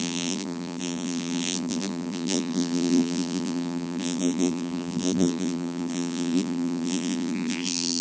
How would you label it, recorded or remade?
remade